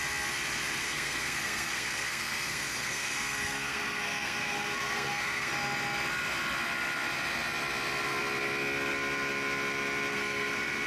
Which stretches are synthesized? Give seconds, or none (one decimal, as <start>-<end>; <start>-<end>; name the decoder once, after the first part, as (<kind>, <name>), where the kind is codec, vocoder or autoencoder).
0.8-5.5 (codec, SNAC); 10.1-10.9